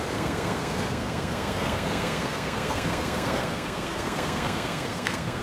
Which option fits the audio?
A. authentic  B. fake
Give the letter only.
B